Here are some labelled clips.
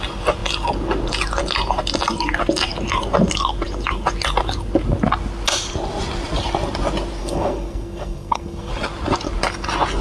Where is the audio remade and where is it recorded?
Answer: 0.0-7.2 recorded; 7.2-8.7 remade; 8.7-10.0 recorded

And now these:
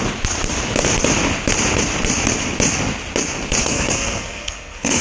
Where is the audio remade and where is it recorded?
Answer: 0.0-3.6 recorded; 3.6-5.0 remade

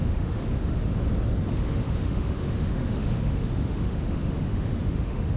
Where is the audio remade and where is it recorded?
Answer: 0.0-1.0 remade; 1.0-1.5 recorded; 1.5-5.4 remade

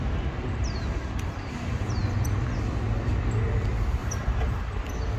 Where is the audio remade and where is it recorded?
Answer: 0.0-4.0 recorded; 4.0-4.8 remade; 4.8-5.2 recorded